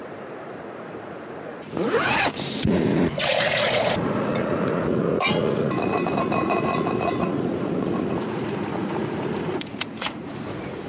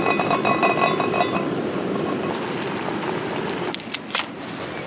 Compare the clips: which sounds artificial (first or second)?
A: first